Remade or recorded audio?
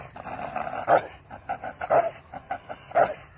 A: recorded